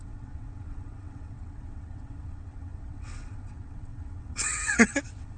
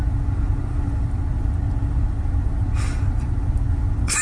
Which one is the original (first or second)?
second